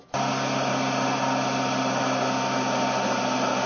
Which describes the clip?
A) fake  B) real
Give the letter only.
B